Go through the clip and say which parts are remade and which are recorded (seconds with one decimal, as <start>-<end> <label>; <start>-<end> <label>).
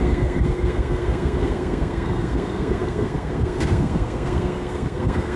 0.0-5.4 remade